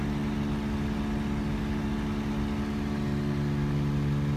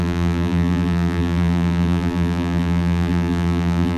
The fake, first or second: second